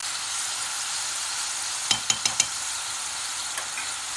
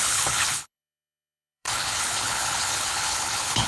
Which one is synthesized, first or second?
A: second